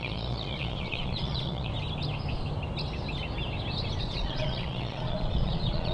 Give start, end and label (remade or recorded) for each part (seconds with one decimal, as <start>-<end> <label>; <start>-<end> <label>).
0.0-1.7 remade; 1.7-4.0 recorded; 4.0-5.9 remade